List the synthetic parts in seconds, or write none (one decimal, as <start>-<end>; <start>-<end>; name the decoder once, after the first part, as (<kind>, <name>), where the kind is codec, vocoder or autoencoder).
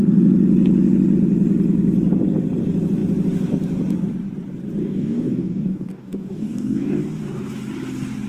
4.8-7.0 (codec, DAC)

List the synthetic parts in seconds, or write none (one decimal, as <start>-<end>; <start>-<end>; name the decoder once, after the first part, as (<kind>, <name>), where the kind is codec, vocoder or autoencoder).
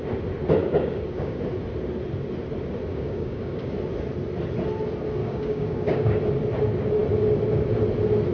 0.6-1.4 (codec, DAC); 2.9-3.7; 5.2-6.1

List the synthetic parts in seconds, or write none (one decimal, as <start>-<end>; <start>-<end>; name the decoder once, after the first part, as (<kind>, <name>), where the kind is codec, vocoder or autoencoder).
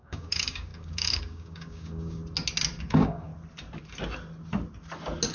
0.0-2.2 (codec, DAC); 2.8-3.3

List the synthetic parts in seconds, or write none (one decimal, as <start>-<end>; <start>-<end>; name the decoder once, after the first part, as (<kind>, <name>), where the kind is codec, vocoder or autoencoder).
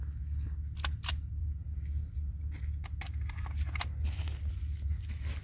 none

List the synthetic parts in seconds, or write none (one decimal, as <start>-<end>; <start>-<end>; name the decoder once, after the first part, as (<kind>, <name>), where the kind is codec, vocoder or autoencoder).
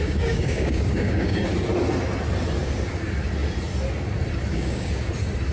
0.0-1.4 (codec, DAC); 4.5-5.1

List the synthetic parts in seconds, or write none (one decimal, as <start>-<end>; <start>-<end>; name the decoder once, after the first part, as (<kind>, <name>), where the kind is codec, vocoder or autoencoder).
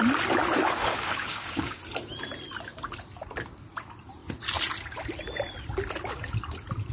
0.9-1.8 (codec, DAC)